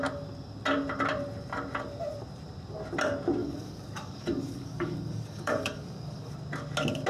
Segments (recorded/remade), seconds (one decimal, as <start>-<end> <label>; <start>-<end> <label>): 0.0-3.4 recorded; 3.4-6.3 remade; 6.3-7.1 recorded